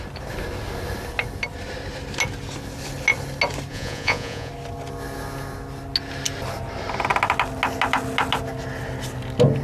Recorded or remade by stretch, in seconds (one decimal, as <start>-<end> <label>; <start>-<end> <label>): 0.0-3.7 recorded; 3.7-4.5 remade; 4.5-9.6 recorded